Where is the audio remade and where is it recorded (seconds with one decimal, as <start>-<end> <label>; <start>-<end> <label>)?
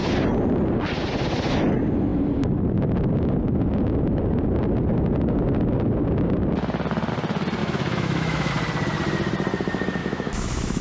0.0-7.6 recorded; 7.6-8.5 remade; 8.5-10.0 recorded; 10.0-10.8 remade